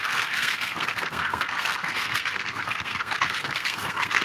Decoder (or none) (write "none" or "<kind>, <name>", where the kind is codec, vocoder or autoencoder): codec, SNAC